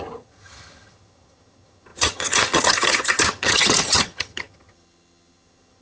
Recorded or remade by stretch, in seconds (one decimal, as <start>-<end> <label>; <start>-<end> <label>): 0.0-5.8 remade